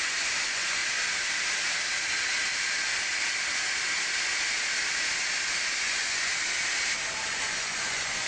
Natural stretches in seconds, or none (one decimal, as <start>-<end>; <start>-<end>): 0.8-5.8; 6.3-7.3

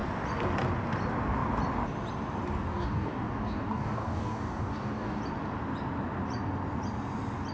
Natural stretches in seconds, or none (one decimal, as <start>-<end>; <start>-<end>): 0.0-2.7; 5.2-7.5

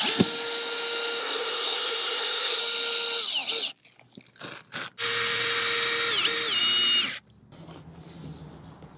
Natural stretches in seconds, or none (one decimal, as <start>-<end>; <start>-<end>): 0.0-1.2; 2.6-9.0